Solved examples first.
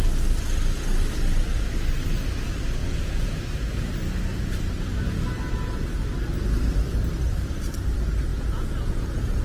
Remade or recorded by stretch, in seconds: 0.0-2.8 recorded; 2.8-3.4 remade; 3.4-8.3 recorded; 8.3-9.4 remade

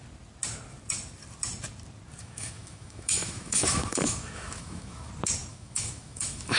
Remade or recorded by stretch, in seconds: 0.0-2.2 recorded; 2.2-5.1 remade; 5.1-5.5 recorded; 5.5-6.6 remade